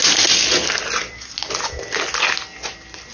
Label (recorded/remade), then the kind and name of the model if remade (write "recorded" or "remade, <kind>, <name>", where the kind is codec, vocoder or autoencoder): recorded